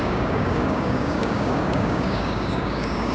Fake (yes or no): yes